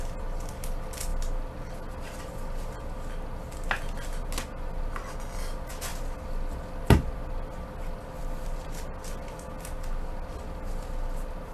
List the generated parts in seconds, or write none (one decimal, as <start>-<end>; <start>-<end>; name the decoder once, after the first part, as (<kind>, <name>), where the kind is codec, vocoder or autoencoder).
none